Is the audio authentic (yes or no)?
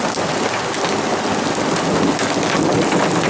yes